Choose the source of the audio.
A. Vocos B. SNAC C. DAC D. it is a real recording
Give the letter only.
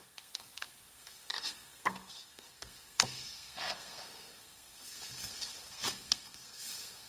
B